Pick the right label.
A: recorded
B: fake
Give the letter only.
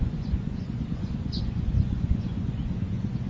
B